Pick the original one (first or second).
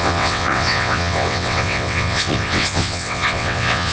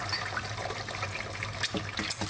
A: second